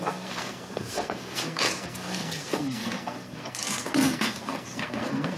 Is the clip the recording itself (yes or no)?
no